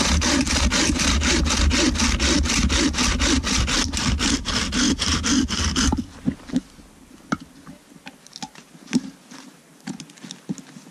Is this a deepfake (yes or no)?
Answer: no